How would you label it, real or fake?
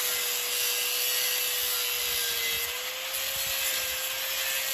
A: real